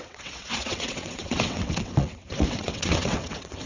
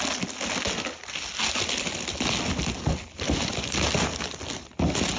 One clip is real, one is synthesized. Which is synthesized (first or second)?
first